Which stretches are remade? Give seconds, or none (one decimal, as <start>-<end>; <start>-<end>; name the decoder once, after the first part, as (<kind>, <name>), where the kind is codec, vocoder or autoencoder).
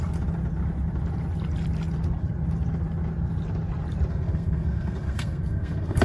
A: 4.1-6.0 (codec, SNAC)